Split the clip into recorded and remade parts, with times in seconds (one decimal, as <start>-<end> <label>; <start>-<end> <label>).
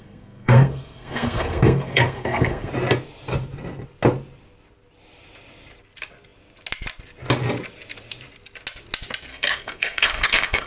0.0-2.7 remade; 2.7-9.3 recorded; 9.3-10.7 remade